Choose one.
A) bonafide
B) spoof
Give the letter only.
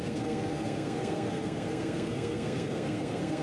B